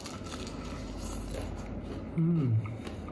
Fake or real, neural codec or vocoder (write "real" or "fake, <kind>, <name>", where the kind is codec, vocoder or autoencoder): real